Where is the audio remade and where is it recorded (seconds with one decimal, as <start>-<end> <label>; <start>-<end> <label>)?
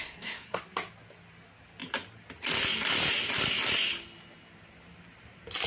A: 0.0-0.6 remade; 0.6-5.7 recorded